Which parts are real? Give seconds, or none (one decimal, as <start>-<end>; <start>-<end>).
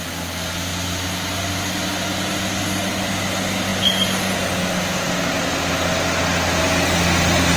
0.0-7.6